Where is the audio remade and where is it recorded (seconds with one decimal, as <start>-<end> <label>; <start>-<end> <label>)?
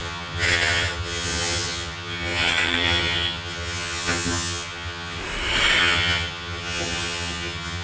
0.0-5.2 remade; 5.2-5.8 recorded; 5.8-7.8 remade